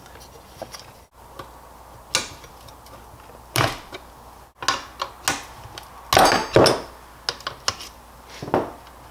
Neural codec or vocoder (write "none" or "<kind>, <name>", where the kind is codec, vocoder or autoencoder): none